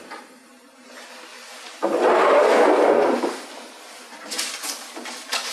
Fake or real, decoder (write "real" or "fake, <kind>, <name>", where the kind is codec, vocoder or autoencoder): real